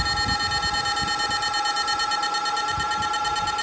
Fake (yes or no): no